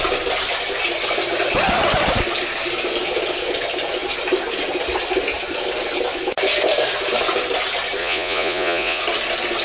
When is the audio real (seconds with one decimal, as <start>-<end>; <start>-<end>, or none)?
0.0-8.0; 9.0-9.6